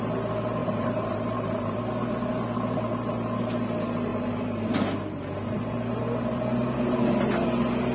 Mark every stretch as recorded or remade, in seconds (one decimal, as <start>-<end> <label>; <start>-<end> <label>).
0.0-0.6 recorded; 0.6-1.8 remade; 1.8-4.1 recorded; 4.1-4.7 remade; 4.7-7.9 recorded